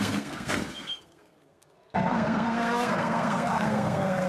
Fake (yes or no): yes